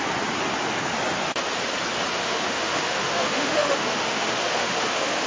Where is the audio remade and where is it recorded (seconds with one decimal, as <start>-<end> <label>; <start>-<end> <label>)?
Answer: 0.0-2.1 recorded; 2.1-5.3 remade